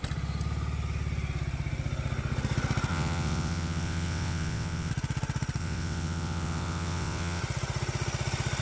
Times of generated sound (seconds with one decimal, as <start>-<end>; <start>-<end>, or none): 2.9-4.9; 5.6-7.4